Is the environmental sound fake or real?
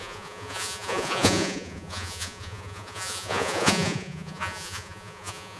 fake